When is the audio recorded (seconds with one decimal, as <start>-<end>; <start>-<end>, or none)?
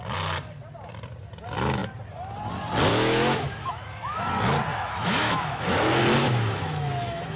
0.0-2.9; 4.3-4.7; 5.7-6.2